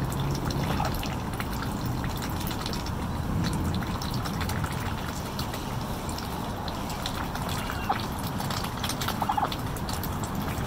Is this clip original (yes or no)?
yes